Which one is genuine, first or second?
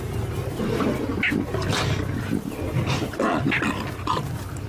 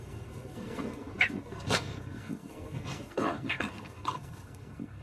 first